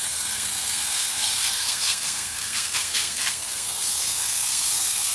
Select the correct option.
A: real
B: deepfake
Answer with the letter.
B